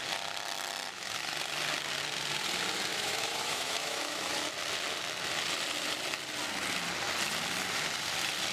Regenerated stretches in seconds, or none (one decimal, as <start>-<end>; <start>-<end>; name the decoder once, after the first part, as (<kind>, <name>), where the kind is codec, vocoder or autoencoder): 2.9-4.3 (autoencoder, DAC-VAE)